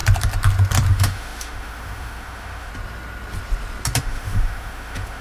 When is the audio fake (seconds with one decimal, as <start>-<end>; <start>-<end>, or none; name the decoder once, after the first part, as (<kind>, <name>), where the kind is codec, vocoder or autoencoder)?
0.9-2.7 (autoencoder, DAC-VAE); 4.0-5.2